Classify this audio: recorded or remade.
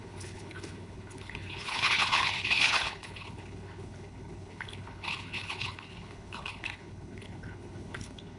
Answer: remade